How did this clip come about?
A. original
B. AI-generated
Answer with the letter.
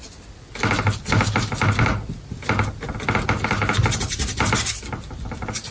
A